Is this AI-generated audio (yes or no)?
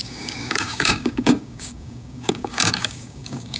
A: yes